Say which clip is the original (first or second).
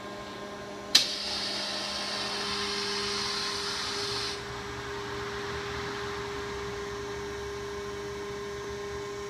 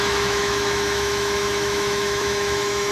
first